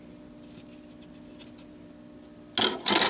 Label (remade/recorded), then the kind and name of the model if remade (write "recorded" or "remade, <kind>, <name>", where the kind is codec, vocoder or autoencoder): recorded